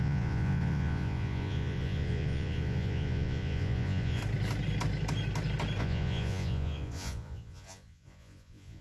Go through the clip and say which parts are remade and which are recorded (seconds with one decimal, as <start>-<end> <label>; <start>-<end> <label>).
0.0-4.2 remade; 4.2-5.8 recorded; 5.8-8.8 remade